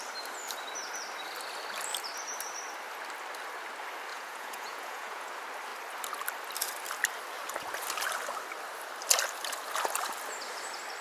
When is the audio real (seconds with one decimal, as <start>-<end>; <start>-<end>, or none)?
0.0-4.1; 5.3-11.0